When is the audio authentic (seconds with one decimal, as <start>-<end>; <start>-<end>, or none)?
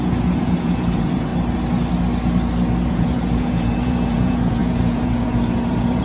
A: 1.3-2.9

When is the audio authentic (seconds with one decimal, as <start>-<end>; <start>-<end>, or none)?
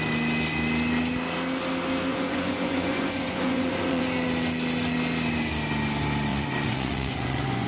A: 0.0-2.1; 4.0-6.3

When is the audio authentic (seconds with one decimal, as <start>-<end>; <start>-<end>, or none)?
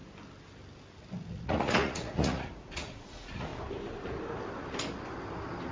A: 0.0-1.3; 3.5-5.7